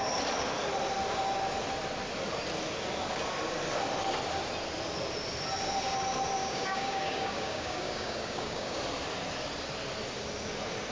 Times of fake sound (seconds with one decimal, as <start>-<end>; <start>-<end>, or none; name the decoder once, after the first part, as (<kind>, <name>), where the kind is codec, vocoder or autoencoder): 6.4-8.8 (codec, DAC)